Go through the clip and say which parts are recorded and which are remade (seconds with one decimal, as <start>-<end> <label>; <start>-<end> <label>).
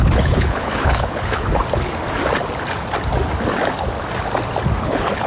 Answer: 0.0-1.6 remade; 1.6-4.8 recorded; 4.8-5.3 remade